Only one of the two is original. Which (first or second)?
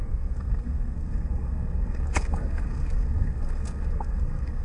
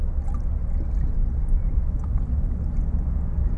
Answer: second